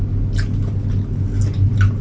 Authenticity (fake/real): real